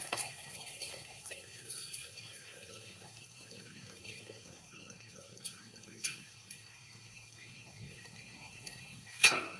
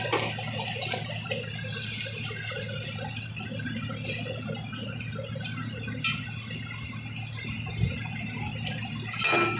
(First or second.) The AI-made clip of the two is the first